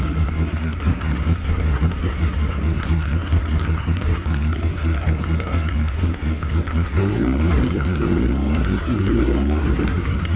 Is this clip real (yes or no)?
no